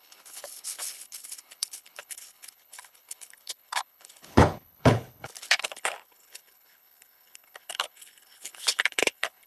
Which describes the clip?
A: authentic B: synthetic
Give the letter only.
B